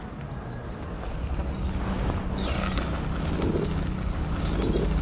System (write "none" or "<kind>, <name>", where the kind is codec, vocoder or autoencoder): none